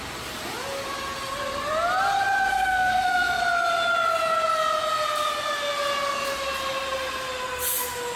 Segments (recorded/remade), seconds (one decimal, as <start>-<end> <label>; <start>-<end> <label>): 0.0-2.5 recorded; 2.5-3.4 remade; 3.4-8.2 recorded